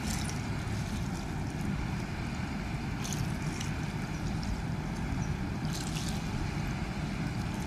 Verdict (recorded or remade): recorded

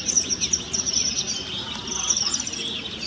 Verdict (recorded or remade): recorded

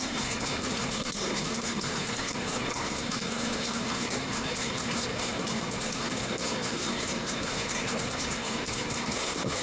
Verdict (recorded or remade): remade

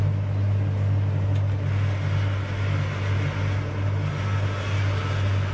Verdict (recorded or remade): recorded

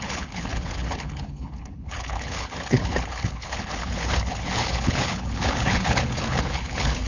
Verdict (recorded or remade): remade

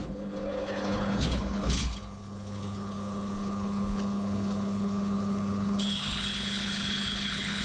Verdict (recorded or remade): remade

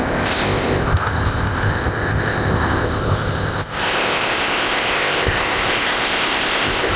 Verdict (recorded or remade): remade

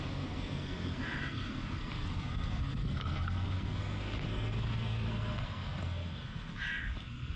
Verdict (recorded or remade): remade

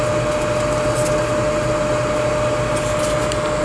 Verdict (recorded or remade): recorded